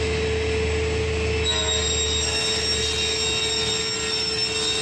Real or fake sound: real